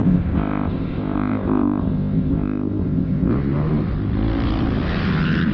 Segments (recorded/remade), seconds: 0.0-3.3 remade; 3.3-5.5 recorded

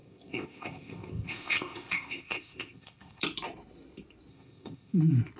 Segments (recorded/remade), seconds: 0.0-3.2 remade; 3.2-4.3 recorded; 4.3-5.0 remade; 5.0-5.4 recorded